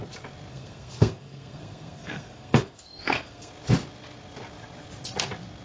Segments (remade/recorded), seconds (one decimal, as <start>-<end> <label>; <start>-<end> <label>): 0.0-0.5 recorded; 0.5-3.5 remade; 3.5-5.6 recorded

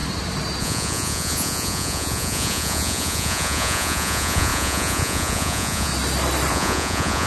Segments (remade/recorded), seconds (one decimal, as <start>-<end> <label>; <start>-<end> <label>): 0.0-0.6 recorded; 0.6-5.9 remade; 5.9-6.5 recorded; 6.5-7.3 remade

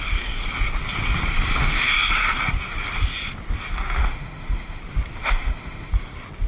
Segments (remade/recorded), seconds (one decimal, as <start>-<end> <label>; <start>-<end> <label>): 0.0-1.6 recorded; 1.6-2.1 remade; 2.1-4.0 recorded; 4.0-4.8 remade; 4.8-5.2 recorded; 5.2-5.9 remade; 5.9-6.5 recorded